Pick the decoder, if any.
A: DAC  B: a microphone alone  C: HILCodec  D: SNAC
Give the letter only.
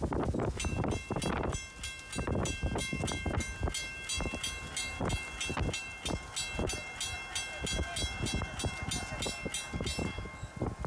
B